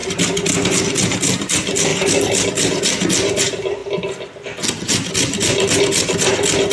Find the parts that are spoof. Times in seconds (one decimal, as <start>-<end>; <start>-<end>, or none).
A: none